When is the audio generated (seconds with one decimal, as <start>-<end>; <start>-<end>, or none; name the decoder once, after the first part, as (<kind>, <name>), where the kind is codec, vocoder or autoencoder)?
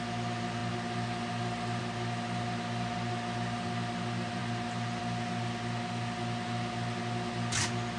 none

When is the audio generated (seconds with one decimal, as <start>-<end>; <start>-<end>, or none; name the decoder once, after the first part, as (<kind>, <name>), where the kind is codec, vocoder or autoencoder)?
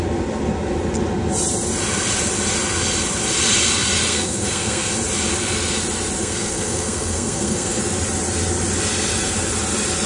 4.1-4.9 (codec, SNAC); 6.2-7.8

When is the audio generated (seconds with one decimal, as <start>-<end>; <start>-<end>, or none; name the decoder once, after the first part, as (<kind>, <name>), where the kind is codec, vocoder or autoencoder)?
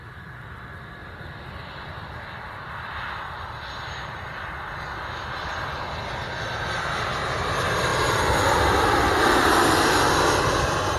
1.0-5.9 (vocoder, BigVGAN v2); 7.9-9.5